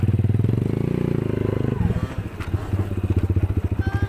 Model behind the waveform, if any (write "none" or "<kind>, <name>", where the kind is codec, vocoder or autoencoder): none